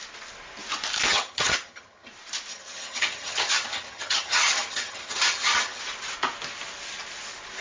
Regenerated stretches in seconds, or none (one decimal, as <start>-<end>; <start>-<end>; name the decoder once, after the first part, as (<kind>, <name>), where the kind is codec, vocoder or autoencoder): 1.1-2.1 (vocoder, HiFi-GAN); 2.5-5.8